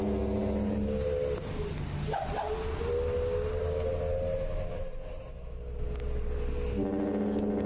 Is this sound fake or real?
real